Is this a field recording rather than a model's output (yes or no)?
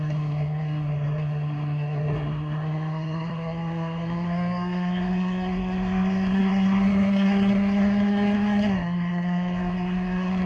no